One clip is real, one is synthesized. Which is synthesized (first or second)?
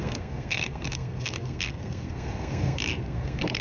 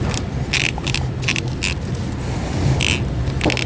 first